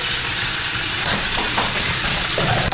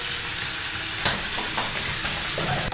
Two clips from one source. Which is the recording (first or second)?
second